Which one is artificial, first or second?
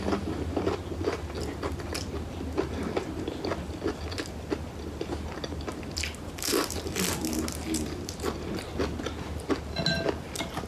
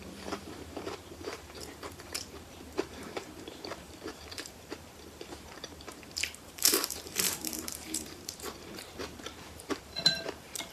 second